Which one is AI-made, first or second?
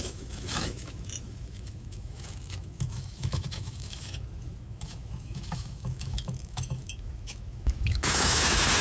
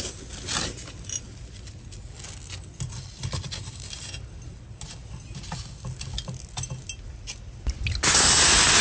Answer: first